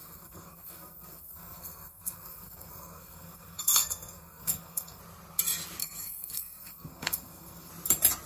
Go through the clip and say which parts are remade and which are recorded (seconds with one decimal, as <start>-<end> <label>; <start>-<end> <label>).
0.0-5.0 remade; 5.0-5.8 recorded; 5.8-7.7 remade; 7.7-8.3 recorded